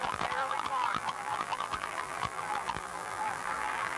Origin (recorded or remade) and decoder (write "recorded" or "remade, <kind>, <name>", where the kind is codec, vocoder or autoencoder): remade, vocoder, BigVGAN v2